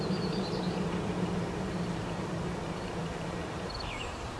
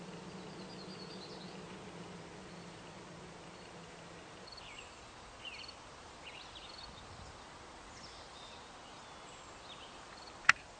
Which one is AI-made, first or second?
first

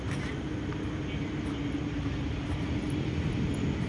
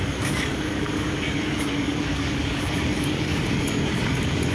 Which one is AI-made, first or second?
second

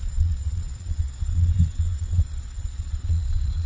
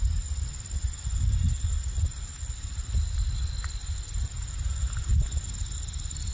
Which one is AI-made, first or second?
first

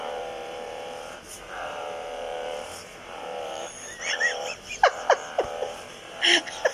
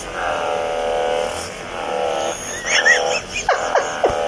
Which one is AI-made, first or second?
first